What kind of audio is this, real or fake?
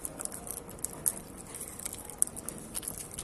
real